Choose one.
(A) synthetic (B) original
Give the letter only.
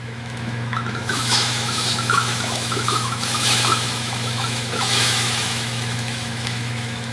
A